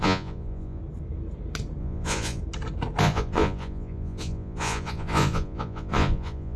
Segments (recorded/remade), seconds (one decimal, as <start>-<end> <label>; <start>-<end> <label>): 0.0-0.8 remade; 0.8-1.8 recorded; 1.8-2.4 remade; 2.4-3.0 recorded; 3.0-6.6 remade